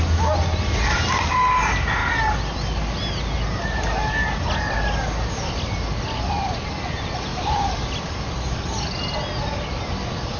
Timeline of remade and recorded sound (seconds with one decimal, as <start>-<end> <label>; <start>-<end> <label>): 0.0-10.4 recorded